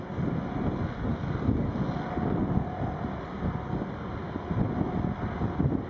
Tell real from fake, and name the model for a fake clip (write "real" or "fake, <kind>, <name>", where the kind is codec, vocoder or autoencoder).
real